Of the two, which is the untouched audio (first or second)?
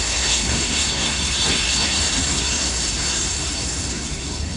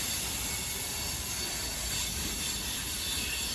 second